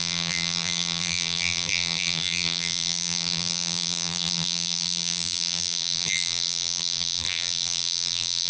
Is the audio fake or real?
fake